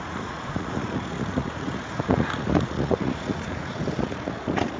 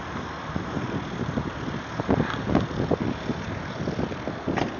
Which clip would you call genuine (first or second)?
second